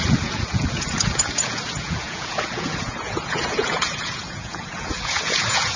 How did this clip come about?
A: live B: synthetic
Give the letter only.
B